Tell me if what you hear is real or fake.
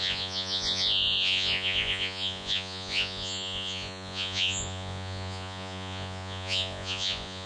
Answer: fake